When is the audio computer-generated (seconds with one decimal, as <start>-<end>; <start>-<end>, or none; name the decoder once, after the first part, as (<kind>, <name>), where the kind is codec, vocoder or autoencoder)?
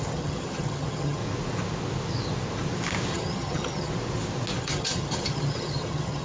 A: 0.0-1.2 (vocoder, HiFi-GAN); 3.1-3.9; 4.6-6.2